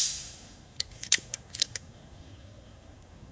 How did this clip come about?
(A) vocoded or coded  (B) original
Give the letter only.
A